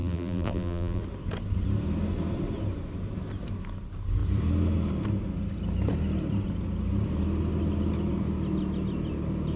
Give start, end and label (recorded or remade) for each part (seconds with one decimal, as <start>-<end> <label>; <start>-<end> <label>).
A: 0.0-1.0 remade; 1.0-9.6 recorded